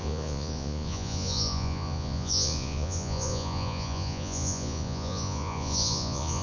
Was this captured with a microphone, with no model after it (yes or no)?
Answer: no